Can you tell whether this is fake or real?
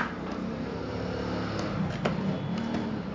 real